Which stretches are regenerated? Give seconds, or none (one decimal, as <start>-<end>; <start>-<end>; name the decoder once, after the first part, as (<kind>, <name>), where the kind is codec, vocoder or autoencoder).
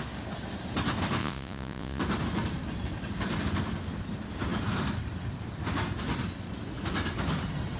1.2-2.0 (vocoder, Vocos)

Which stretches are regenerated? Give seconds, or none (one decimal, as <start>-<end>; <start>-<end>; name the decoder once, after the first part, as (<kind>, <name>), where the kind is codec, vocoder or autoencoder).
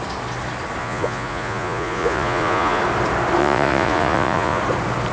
0.8-2.8 (vocoder, Vocos); 3.4-4.6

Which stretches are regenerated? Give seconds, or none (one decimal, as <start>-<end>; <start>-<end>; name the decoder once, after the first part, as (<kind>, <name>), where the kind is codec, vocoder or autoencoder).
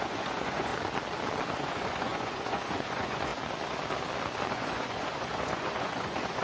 0.0-0.7 (vocoder, Vocos); 1.5-3.3; 4.5-6.4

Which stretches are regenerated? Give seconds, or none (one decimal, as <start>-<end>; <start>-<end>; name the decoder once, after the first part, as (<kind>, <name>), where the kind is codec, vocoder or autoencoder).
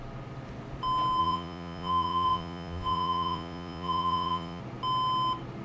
1.2-4.6 (vocoder, Vocos)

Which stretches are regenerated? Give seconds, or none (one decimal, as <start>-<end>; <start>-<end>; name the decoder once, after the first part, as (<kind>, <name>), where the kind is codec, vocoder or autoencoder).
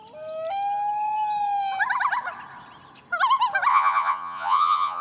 3.7-5.0 (vocoder, Vocos)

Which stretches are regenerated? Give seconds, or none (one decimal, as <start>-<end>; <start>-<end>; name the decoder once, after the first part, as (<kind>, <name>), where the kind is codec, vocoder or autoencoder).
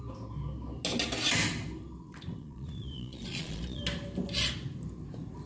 2.4-3.8 (vocoder, Vocos)